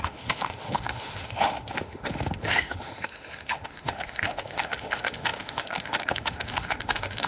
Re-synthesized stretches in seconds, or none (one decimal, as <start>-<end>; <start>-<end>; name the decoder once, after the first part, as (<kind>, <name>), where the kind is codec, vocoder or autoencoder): 0.0-7.3 (autoencoder, DAC-VAE)